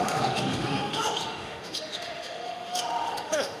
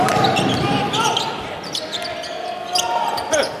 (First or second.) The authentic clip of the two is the second